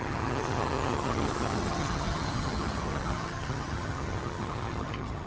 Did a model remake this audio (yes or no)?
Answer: yes